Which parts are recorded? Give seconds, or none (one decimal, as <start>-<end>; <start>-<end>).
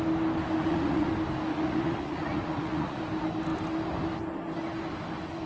0.0-0.6; 1.1-1.5; 3.0-5.5